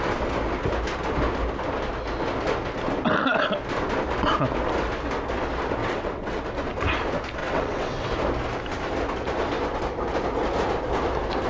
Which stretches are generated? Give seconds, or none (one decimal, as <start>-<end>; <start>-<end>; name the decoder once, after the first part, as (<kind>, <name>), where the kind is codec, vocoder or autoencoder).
5.8-6.4 (vocoder, WaveNeXt); 7.4-8.1